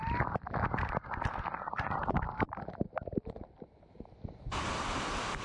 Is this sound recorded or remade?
recorded